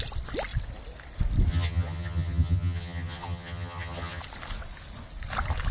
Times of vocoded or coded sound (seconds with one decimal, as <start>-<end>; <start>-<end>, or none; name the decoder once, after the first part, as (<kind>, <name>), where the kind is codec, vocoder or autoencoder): 1.5-4.2 (vocoder, HiFi-GAN)